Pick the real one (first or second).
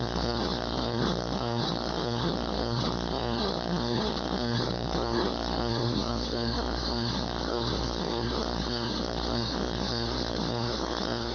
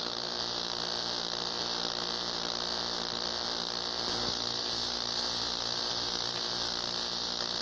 second